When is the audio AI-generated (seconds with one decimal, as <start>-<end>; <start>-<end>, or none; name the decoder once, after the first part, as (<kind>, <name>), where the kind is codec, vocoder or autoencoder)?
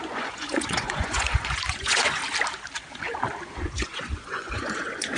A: 0.0-2.2 (vocoder, Vocos); 3.4-5.2